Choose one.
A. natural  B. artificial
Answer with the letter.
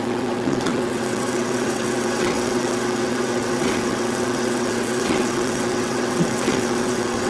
B